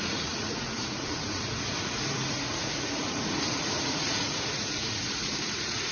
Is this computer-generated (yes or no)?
yes